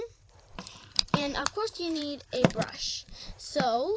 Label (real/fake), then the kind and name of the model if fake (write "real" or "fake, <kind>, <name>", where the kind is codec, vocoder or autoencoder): fake, vocoder, BigVGAN v2